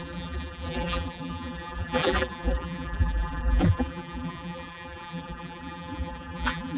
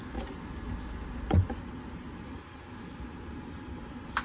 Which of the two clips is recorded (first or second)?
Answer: second